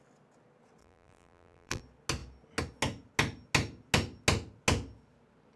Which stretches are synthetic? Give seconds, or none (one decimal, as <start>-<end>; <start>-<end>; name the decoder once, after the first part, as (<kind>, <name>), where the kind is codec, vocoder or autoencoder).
0.8-1.8 (vocoder, BigVGAN v2)